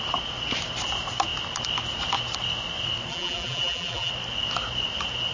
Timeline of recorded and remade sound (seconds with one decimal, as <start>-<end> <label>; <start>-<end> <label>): 0.0-3.1 recorded; 3.1-4.1 remade; 4.1-5.3 recorded

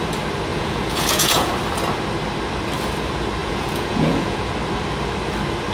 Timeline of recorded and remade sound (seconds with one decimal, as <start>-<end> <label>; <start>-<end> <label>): 0.0-0.5 recorded; 0.5-1.5 remade; 1.5-3.4 recorded; 3.4-4.5 remade; 4.5-5.7 recorded

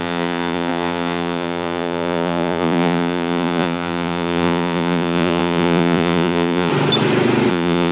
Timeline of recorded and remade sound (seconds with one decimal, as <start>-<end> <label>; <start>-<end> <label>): 0.0-6.7 remade; 6.7-7.5 recorded; 7.5-7.9 remade